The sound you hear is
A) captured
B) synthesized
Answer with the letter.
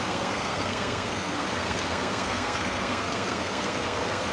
B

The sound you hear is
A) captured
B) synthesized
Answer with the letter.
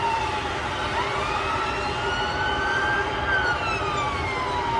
B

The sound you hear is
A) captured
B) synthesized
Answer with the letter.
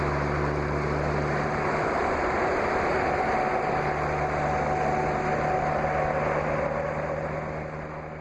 A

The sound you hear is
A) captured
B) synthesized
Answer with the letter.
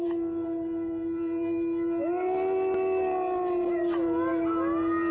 A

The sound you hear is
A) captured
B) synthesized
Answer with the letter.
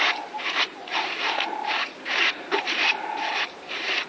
B